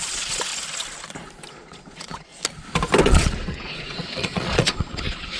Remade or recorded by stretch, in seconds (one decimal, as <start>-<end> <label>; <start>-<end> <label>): 0.0-0.5 remade; 0.5-1.5 recorded; 1.5-2.3 remade; 2.3-3.0 recorded; 3.0-5.4 remade